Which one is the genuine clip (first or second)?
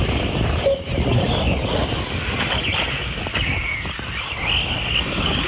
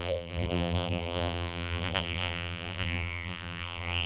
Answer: first